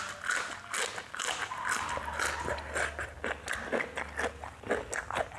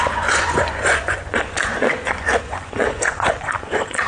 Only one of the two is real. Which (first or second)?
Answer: first